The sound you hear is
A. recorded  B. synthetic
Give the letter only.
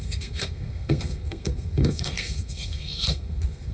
B